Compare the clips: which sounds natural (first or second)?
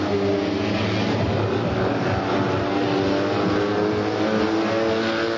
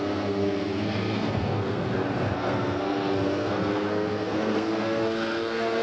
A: first